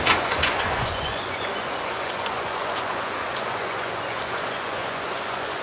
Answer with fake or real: fake